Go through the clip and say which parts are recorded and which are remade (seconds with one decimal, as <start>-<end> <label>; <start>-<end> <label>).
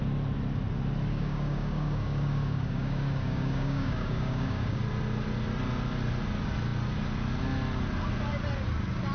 0.0-1.1 recorded; 1.1-4.8 remade; 4.8-9.1 recorded